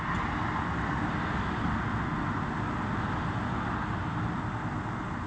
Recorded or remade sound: recorded